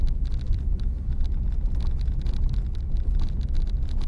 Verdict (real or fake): real